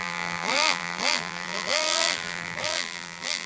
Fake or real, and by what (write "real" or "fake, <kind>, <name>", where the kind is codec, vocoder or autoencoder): fake, vocoder, BigVGAN v2